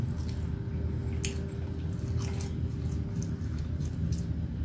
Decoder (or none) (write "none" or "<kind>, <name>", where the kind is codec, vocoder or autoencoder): none